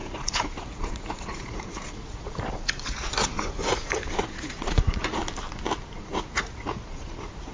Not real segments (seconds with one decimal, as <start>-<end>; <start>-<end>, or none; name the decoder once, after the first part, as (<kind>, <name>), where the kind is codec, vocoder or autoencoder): 0.0-5.2 (vocoder, Vocos); 6.0-7.5